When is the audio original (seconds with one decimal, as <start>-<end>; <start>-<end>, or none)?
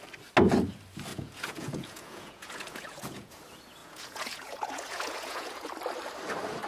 0.0-1.1; 3.4-3.8; 5.7-6.7